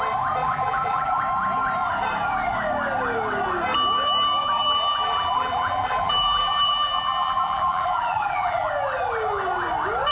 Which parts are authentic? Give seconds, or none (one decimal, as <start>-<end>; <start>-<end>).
0.0-0.4; 1.2-4.4; 8.7-10.1